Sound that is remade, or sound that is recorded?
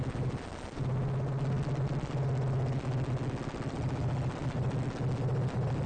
recorded